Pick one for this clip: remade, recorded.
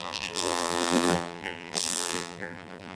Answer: remade